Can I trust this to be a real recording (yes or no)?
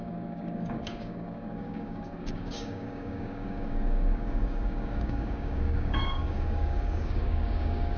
no